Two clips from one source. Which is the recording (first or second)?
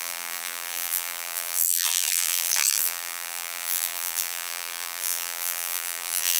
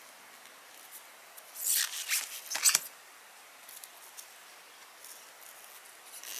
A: second